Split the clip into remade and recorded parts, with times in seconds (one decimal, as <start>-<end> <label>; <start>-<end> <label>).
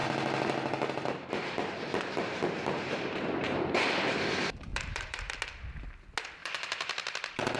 0.0-3.9 remade; 3.9-4.7 recorded; 4.7-5.3 remade; 5.3-6.4 recorded; 6.4-7.6 remade